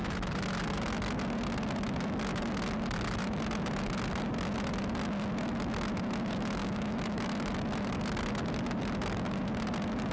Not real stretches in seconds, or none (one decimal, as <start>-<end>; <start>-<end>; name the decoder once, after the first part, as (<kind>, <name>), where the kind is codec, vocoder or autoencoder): 6.6-7.5 (autoencoder, DAC-VAE)